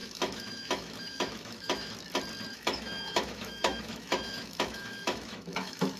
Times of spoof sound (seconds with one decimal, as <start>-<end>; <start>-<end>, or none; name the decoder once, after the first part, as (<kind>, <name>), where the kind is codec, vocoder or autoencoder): 0.0-1.9 (autoencoder, DAC-VAE); 2.5-6.0